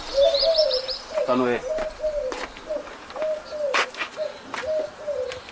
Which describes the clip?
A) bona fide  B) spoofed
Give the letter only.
B